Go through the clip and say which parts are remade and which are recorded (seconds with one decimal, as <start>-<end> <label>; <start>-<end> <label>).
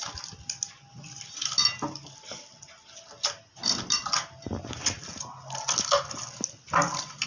0.0-7.3 recorded